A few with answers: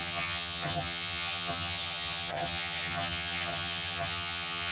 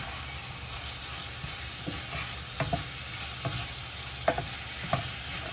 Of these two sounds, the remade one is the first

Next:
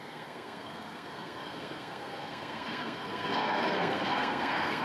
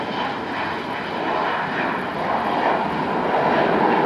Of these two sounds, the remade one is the first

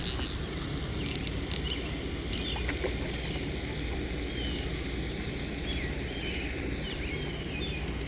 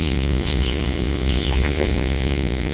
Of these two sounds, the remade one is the second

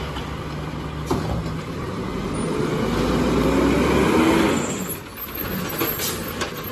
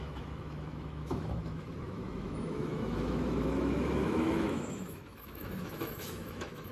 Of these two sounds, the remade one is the second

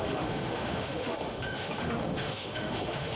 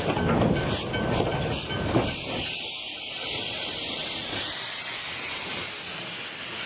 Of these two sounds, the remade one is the first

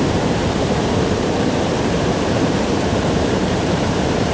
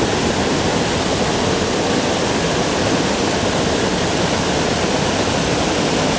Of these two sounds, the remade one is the first